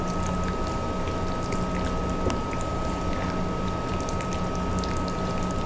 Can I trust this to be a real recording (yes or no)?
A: yes